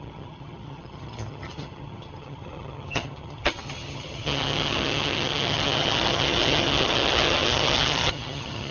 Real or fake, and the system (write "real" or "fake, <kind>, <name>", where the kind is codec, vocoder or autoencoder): fake, vocoder, HiFi-GAN